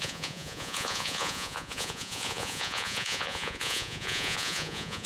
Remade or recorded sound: remade